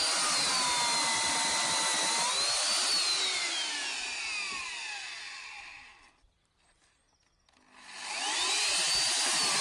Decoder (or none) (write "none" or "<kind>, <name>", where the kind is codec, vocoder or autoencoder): none